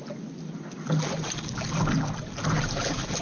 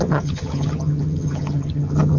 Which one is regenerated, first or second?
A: second